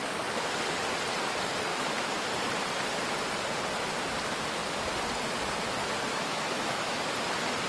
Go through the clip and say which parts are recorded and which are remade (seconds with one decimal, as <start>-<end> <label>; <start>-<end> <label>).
0.0-1.7 recorded; 1.7-2.3 remade; 2.3-6.1 recorded; 6.1-7.1 remade; 7.1-7.7 recorded